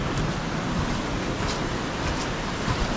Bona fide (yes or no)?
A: yes